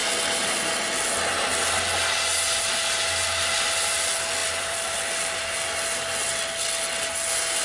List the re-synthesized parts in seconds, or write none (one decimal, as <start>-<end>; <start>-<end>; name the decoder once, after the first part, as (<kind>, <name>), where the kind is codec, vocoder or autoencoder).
4.4-5.4 (vocoder, BigVGAN v2); 6.2-6.8